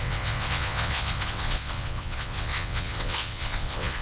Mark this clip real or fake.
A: fake